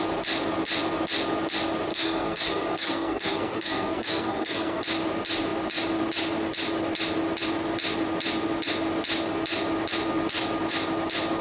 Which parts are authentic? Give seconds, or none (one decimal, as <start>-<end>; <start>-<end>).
0.0-1.9; 4.8-11.4